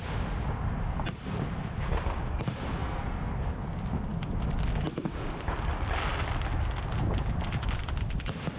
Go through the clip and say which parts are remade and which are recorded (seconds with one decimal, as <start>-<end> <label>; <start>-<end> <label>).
0.0-2.8 recorded; 2.8-3.3 remade; 3.3-8.6 recorded